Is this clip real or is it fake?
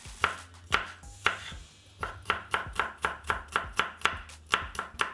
real